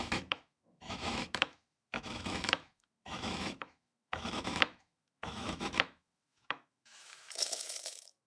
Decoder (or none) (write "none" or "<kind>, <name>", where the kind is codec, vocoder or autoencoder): autoencoder, DAC-VAE